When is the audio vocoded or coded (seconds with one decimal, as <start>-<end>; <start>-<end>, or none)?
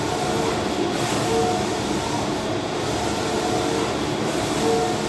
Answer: none